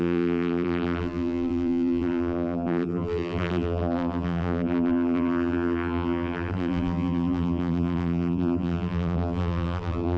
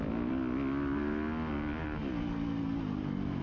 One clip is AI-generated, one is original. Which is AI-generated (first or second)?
first